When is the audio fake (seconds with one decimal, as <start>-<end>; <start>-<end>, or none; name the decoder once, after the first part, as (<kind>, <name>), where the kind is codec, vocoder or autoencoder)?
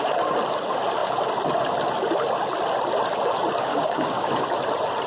3.7-4.4 (codec, DAC)